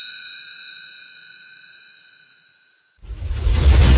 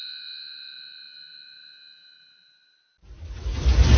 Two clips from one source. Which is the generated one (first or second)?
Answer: first